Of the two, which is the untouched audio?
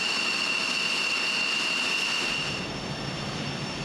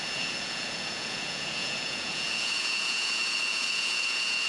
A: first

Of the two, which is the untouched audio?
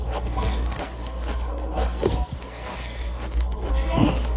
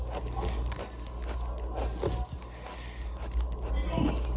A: second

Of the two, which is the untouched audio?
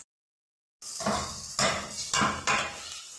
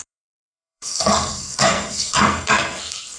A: first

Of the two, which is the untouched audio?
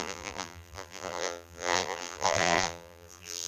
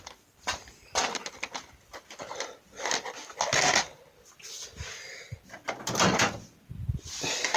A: second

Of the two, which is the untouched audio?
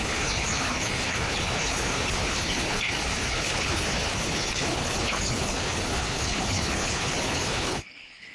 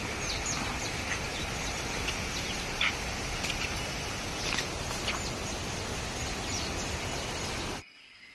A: second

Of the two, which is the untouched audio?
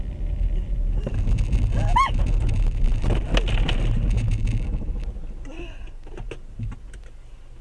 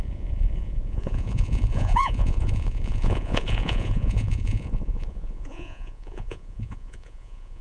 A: first